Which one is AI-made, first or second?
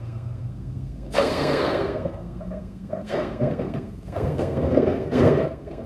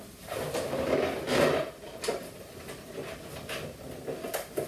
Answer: first